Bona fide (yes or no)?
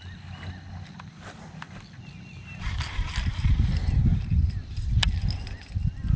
yes